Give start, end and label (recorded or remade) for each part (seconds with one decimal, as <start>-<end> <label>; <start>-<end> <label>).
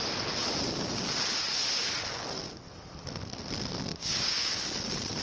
0.0-3.9 recorded; 3.9-4.5 remade; 4.5-5.2 recorded